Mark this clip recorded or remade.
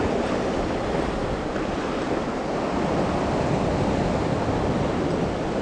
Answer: recorded